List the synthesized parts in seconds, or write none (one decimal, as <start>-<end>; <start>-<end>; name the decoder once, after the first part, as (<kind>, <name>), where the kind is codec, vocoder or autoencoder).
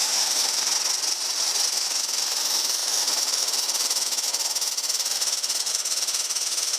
0.0-0.7 (autoencoder, DAC-VAE); 1.7-6.8